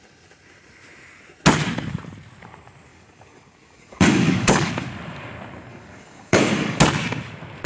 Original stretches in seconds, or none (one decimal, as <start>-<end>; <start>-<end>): 0.0-2.9; 4.7-5.7; 6.8-7.7